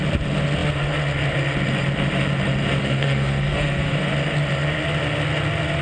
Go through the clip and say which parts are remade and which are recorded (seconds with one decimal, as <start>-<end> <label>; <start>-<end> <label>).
0.0-2.8 recorded; 2.8-4.1 remade; 4.1-5.8 recorded